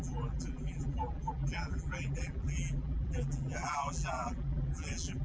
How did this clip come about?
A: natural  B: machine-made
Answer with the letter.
B